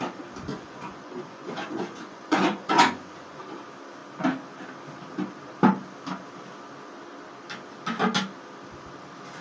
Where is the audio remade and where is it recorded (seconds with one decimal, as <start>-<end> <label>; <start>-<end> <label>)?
0.0-0.5 recorded; 0.5-3.4 remade; 3.4-9.4 recorded